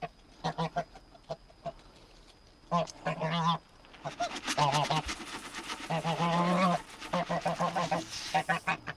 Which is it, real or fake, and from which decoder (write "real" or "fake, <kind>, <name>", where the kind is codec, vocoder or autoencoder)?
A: real